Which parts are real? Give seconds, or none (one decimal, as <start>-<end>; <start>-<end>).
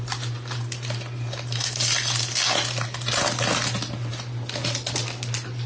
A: 0.0-5.7